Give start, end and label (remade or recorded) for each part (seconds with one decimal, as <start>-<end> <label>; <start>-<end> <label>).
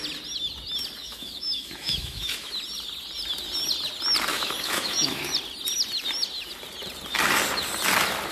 0.0-1.0 recorded; 1.0-2.5 remade; 2.5-4.3 recorded; 4.3-5.3 remade; 5.3-8.3 recorded